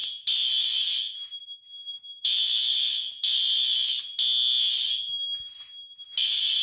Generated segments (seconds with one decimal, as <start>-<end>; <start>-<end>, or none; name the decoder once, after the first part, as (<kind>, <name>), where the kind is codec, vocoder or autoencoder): none